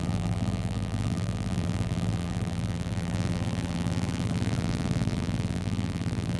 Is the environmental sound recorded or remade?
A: remade